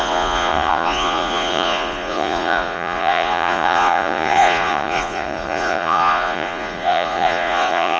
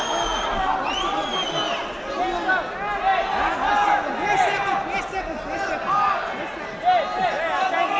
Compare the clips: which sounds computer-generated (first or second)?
first